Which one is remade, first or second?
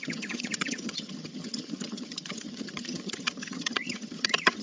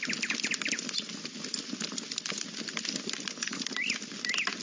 first